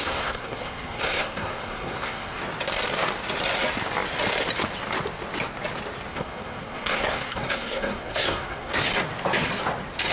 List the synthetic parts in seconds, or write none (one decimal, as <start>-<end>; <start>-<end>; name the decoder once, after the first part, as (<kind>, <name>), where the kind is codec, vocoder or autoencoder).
0.0-2.4 (codec, SNAC); 6.1-8.9